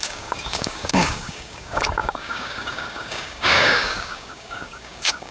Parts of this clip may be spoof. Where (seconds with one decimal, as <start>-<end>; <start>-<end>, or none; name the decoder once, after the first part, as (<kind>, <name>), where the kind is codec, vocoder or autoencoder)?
0.0-5.3 (codec, DAC)